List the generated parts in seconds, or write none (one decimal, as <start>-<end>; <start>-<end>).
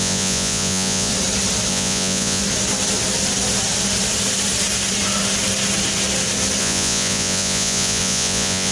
0.0-1.1; 1.7-2.4; 6.6-8.7